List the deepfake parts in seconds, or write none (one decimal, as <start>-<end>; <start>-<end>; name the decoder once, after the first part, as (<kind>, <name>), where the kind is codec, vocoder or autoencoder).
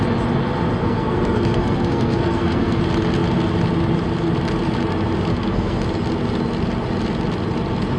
0.8-2.8 (codec, SNAC); 5.3-5.8